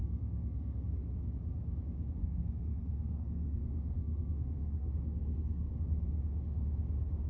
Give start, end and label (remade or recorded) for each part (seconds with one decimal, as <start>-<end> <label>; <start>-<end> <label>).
0.0-1.1 remade; 1.1-2.2 recorded; 2.2-5.7 remade; 5.7-7.3 recorded

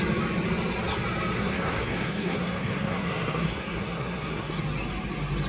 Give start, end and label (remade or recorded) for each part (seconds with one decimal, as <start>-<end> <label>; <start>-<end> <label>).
0.0-1.4 recorded; 1.4-4.6 remade; 4.6-5.5 recorded